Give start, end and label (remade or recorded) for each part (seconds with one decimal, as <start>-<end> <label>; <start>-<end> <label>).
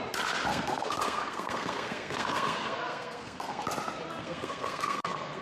0.0-0.5 recorded; 0.5-3.6 remade; 3.6-4.2 recorded; 4.2-5.4 remade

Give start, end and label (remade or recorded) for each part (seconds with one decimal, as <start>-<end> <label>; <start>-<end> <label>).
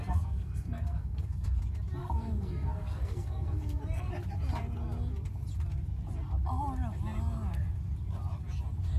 0.0-1.6 remade; 1.6-2.0 recorded; 2.0-4.1 remade; 4.1-9.0 recorded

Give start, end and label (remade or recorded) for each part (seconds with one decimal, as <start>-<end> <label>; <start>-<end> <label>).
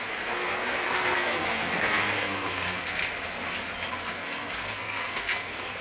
0.0-3.0 remade; 3.0-3.9 recorded; 3.9-5.8 remade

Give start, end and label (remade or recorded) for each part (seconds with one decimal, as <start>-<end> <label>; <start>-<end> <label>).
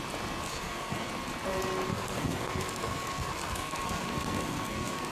0.0-0.4 recorded; 0.4-1.1 remade; 1.1-1.9 recorded; 1.9-5.1 remade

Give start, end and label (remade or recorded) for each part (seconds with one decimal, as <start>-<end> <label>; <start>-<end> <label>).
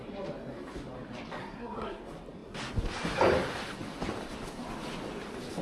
0.0-1.4 recorded; 1.4-2.0 remade; 2.0-5.6 recorded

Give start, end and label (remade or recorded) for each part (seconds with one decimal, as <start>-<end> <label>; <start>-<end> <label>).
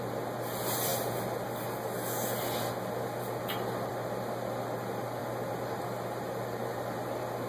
0.0-7.5 recorded